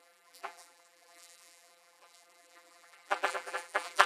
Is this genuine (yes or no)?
no